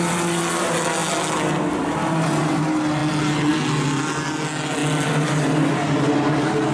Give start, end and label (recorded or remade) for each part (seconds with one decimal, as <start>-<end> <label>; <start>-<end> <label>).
0.0-6.7 recorded